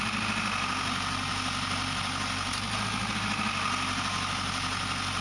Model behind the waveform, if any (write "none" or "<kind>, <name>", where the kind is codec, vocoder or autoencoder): none